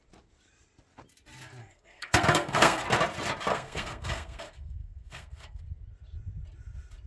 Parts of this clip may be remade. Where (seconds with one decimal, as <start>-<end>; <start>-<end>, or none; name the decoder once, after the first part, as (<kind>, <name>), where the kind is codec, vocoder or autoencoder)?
1.6-2.8 (codec, SNAC); 3.5-5.6